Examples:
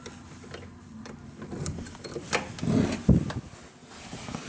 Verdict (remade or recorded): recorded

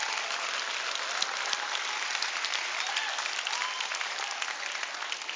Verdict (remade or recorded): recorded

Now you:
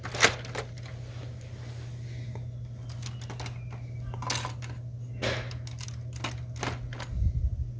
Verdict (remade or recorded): recorded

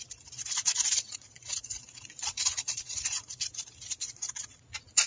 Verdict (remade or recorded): remade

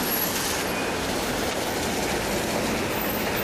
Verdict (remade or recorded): recorded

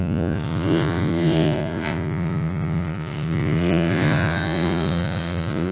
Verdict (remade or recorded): remade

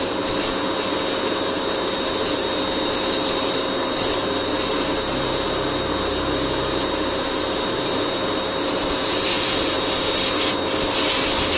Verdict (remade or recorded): recorded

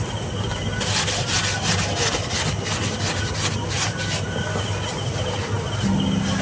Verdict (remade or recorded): recorded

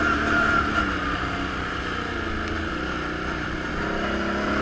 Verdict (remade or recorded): recorded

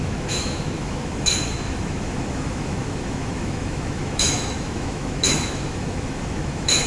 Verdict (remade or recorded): remade